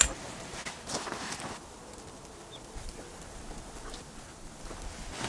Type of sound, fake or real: real